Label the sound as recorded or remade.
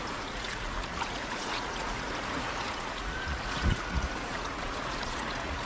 remade